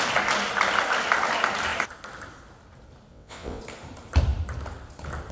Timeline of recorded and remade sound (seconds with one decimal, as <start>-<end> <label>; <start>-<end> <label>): 0.0-3.1 recorded; 3.1-3.6 remade; 3.6-5.3 recorded